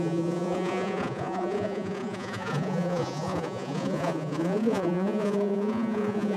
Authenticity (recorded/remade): remade